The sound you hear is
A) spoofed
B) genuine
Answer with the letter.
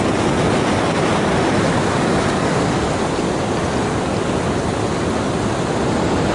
B